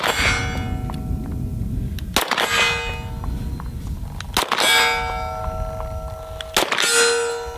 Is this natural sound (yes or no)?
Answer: yes